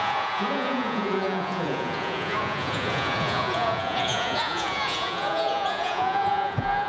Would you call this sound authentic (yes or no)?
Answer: no